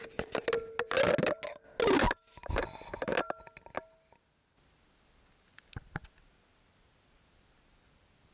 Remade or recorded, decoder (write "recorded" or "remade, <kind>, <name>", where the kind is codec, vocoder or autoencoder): recorded